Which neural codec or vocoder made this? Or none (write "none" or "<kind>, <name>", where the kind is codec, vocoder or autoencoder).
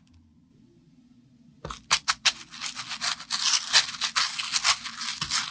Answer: none